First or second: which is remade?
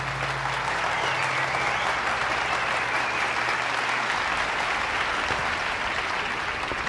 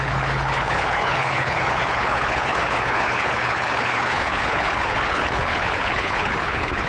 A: second